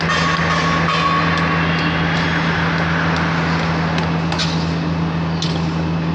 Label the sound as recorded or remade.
recorded